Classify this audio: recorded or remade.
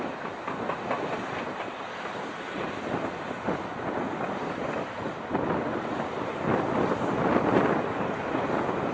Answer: recorded